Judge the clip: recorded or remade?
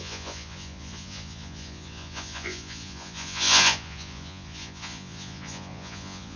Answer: remade